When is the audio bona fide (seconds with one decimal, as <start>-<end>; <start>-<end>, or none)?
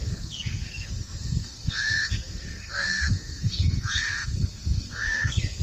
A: none